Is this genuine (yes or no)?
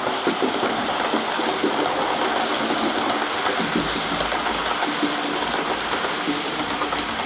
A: yes